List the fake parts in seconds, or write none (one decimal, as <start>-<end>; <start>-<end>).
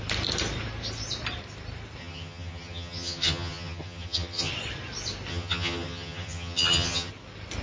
2.0-4.5; 5.3-7.1